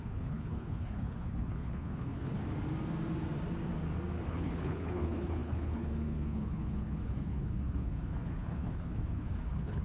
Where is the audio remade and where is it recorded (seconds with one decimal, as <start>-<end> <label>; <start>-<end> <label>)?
0.0-2.4 remade; 2.4-4.2 recorded; 4.2-9.8 remade